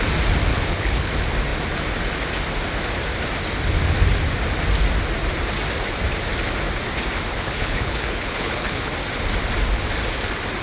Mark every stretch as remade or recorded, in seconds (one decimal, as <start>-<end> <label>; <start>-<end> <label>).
0.0-0.5 recorded; 0.5-1.1 remade; 1.1-7.3 recorded; 7.3-8.9 remade; 8.9-10.6 recorded